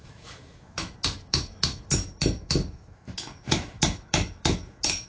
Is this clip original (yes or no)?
no